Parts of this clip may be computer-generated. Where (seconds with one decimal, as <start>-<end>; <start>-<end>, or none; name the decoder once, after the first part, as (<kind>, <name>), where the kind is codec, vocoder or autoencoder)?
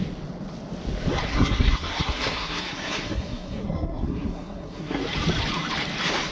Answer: 1.3-5.0 (codec, SNAC)